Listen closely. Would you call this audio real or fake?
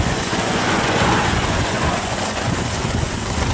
fake